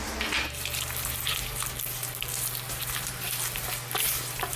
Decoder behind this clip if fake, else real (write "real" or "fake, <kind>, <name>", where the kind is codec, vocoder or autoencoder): real